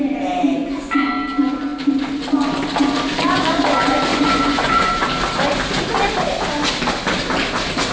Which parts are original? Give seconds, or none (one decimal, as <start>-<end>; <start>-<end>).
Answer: 0.0-0.6; 1.1-4.1; 5.1-7.9